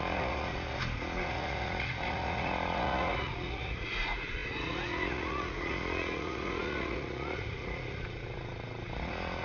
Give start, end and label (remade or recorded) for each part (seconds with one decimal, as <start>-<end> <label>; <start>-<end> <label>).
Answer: 0.0-9.4 remade